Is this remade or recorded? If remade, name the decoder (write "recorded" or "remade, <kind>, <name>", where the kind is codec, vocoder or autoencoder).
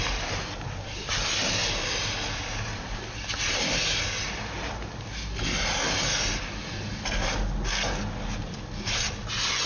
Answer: recorded